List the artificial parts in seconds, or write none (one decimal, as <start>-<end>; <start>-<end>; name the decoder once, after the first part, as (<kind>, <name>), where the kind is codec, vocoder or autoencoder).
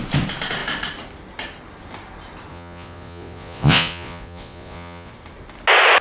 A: 2.5-5.1 (vocoder, Vocos)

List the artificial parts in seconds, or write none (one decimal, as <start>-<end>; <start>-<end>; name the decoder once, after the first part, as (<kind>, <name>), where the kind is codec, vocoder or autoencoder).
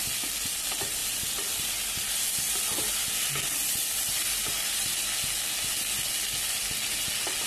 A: 1.0-3.3 (vocoder, BigVGAN v2)